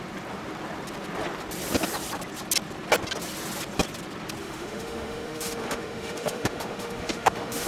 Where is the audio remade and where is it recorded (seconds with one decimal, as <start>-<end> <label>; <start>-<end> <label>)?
0.0-4.4 recorded; 4.4-7.7 remade